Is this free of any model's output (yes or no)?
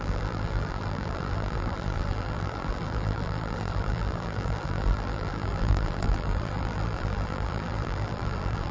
no